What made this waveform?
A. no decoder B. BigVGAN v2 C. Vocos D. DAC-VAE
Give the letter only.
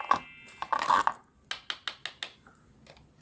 A